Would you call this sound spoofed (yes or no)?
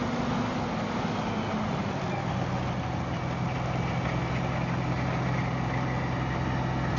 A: no